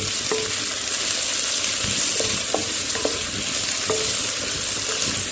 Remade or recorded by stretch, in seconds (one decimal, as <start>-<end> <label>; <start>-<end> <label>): 0.0-2.6 recorded; 2.6-3.3 remade; 3.3-5.3 recorded